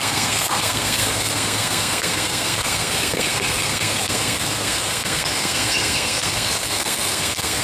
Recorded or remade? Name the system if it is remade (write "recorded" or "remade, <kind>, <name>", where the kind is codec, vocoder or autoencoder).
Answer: remade, codec, SNAC